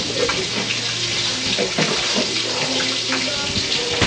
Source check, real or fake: real